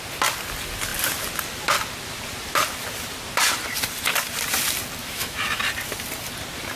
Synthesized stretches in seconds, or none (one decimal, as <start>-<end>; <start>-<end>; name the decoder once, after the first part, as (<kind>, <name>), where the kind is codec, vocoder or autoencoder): 5.0-5.6 (autoencoder, DAC-VAE)